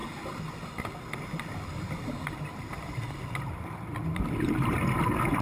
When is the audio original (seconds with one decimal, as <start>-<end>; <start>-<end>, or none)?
0.0-5.4